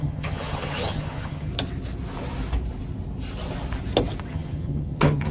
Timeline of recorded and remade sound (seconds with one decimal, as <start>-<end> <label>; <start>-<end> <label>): 0.0-1.5 remade; 1.5-4.3 recorded; 4.3-5.3 remade